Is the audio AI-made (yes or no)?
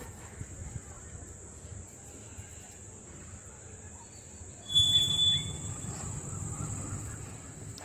yes